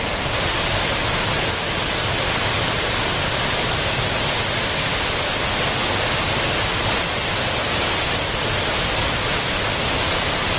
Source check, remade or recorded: recorded